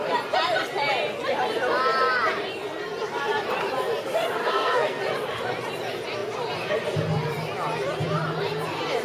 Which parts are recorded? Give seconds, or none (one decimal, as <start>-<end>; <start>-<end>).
0.0-4.4; 5.0-9.0